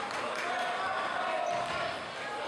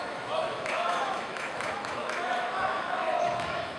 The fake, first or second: second